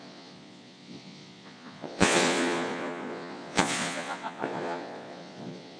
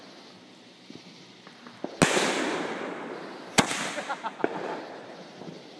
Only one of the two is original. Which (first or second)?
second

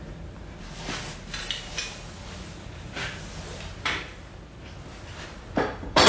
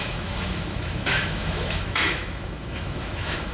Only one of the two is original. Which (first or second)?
first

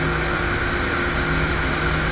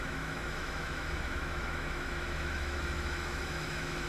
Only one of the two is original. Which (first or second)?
first